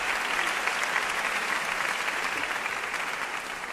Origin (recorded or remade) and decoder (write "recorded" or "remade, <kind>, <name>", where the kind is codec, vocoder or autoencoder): recorded